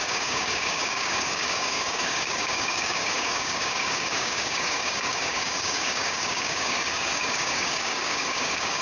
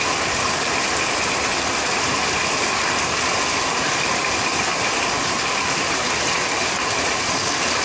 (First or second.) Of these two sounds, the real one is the second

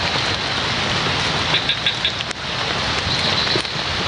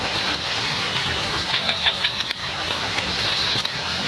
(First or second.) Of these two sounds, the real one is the first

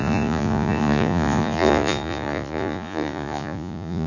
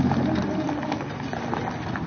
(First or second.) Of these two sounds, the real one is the second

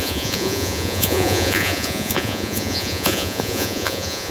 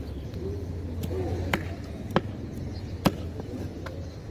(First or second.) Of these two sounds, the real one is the second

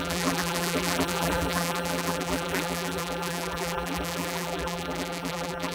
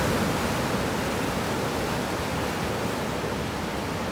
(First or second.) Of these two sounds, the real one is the second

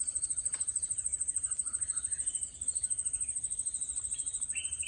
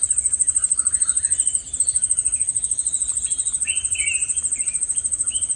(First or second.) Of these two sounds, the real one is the second